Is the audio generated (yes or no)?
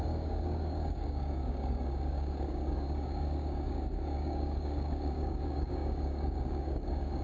yes